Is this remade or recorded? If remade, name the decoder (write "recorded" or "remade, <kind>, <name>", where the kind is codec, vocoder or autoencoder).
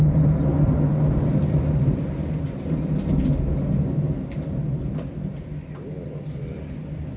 recorded